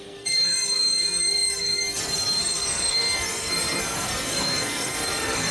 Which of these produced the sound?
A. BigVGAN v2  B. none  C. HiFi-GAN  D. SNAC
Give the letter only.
D